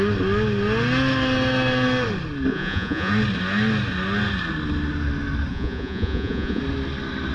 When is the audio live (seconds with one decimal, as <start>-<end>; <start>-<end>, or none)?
0.0-2.5; 3.1-5.5; 6.6-7.3